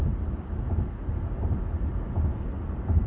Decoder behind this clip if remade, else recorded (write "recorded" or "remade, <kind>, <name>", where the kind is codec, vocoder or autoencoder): recorded